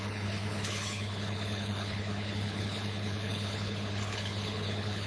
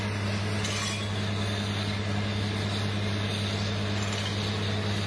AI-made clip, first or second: first